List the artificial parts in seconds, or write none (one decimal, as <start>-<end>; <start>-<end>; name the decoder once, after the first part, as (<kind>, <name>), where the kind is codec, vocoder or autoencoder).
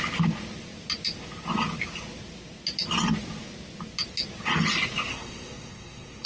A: 5.1-6.3 (codec, SNAC)